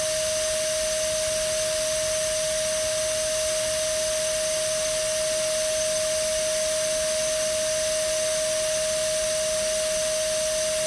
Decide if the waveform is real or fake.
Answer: real